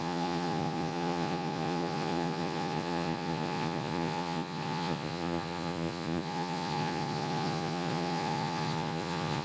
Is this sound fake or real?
fake